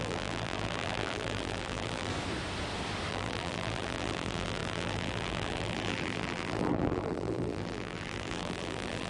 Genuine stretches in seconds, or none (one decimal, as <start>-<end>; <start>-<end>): 2.1-3.1